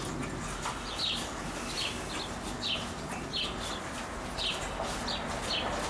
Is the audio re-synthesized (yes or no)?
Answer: no